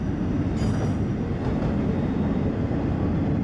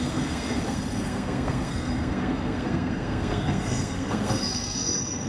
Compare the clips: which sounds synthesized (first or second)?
second